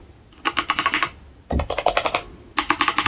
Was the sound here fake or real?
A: real